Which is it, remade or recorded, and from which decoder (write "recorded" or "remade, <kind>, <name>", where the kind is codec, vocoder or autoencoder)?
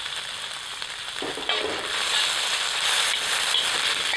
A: recorded